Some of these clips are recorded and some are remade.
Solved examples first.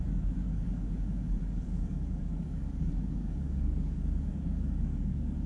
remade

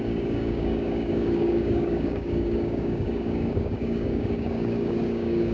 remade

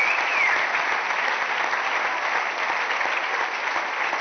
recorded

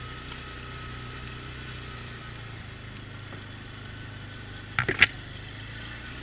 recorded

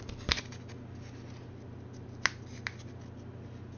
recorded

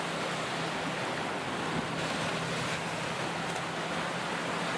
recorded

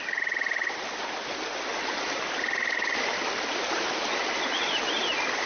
recorded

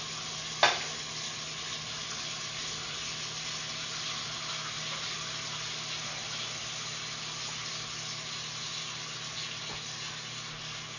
recorded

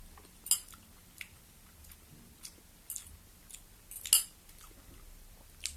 recorded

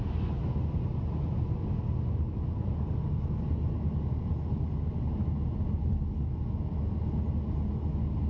recorded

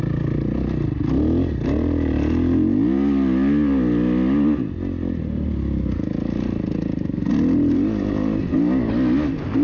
recorded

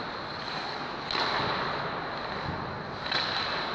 recorded